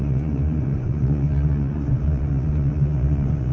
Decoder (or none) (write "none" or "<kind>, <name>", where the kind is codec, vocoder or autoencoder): vocoder, Vocos